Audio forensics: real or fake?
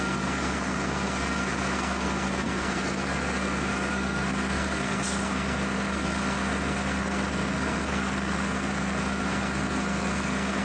fake